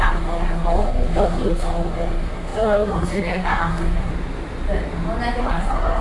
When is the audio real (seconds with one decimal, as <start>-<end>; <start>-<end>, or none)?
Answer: 4.1-5.4